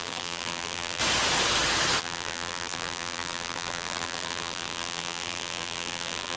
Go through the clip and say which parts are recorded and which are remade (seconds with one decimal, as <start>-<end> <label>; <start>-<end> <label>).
0.0-1.0 remade; 1.0-2.0 recorded; 2.0-6.4 remade